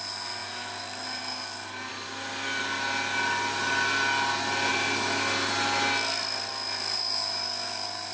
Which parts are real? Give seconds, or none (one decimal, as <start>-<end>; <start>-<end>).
0.0-8.1